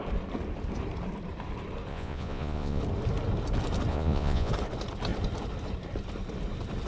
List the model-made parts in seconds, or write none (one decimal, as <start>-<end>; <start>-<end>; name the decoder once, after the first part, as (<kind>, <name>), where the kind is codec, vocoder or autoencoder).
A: 1.9-2.8 (vocoder, Vocos); 3.9-4.5